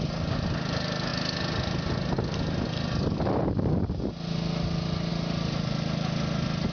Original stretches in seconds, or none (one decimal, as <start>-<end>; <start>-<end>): 0.0-6.7